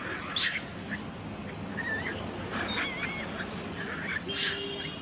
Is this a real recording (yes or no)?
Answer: yes